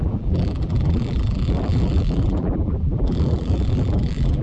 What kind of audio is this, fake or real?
fake